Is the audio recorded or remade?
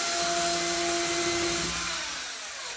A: recorded